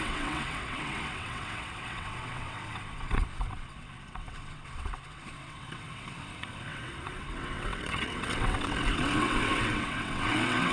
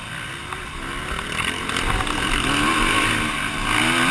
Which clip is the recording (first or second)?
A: second